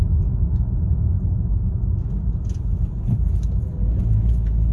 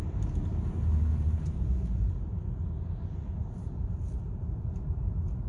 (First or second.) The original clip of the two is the first